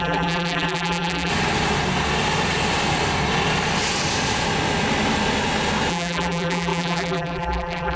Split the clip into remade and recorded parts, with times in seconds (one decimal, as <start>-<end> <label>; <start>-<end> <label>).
0.0-1.3 remade; 1.3-5.9 recorded; 5.9-8.0 remade